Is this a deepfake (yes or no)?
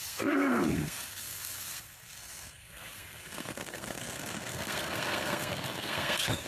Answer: yes